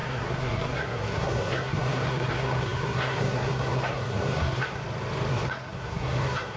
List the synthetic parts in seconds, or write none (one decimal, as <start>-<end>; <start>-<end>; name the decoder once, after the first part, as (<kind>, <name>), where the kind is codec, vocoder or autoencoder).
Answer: 0.0-4.8 (codec, SNAC); 5.3-6.6